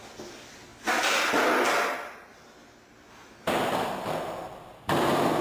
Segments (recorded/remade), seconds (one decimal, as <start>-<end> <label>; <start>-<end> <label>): 0.0-5.4 recorded

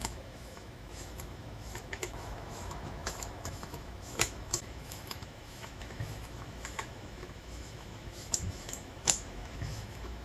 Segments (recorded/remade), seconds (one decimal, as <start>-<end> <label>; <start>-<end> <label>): 0.0-10.2 remade